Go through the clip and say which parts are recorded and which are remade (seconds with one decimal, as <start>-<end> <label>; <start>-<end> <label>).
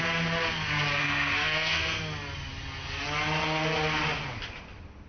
0.0-1.0 recorded; 1.0-2.0 remade; 2.0-5.1 recorded